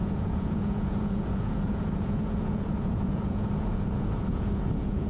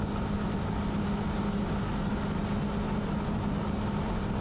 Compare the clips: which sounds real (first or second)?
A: second